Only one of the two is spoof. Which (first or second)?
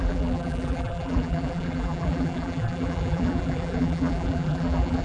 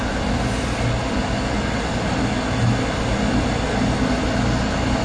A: first